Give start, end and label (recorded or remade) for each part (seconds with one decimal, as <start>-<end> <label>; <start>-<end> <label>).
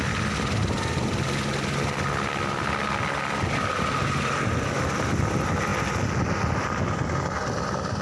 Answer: 0.0-8.0 recorded